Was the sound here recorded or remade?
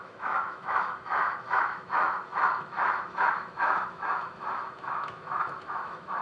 remade